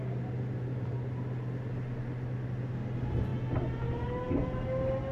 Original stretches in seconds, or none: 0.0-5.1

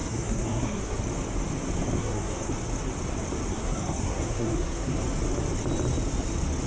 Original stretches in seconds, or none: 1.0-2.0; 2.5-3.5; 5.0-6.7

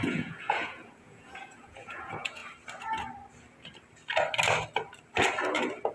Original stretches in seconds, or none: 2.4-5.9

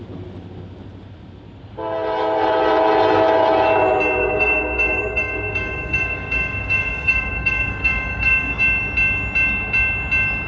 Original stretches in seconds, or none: 0.0-4.2; 8.6-10.5

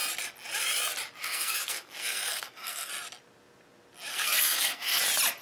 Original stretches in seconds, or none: 0.0-1.2; 2.9-4.1; 5.0-5.4